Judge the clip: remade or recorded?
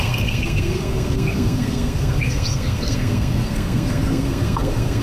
remade